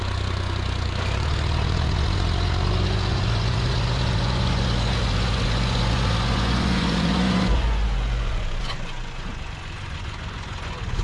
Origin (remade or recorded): remade